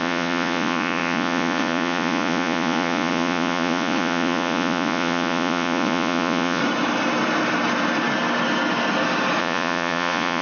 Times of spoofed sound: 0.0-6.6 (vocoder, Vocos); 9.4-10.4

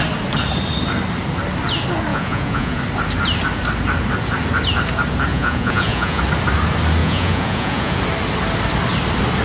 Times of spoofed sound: 2.1-2.8 (vocoder, Vocos); 5.3-6.2; 7.0-8.0

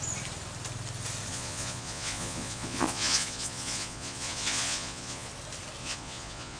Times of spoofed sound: 1.3-5.3 (vocoder, Vocos); 5.8-6.6

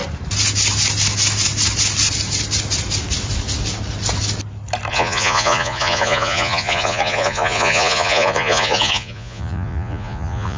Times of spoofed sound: 4.9-10.6 (vocoder, Vocos)

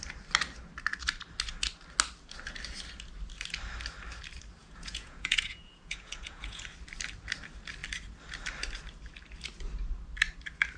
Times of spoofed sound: 4.6-6.6 (vocoder, Vocos)

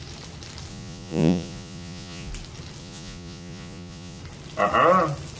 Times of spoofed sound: 0.7-2.3 (vocoder, Vocos); 2.8-4.2

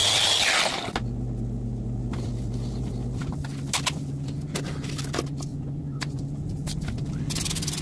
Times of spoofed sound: 5.5-6.2 (vocoder, Vocos)